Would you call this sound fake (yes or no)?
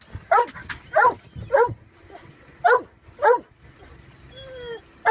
no